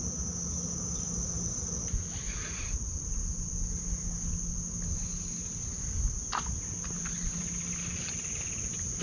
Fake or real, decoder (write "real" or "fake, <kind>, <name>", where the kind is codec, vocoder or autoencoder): real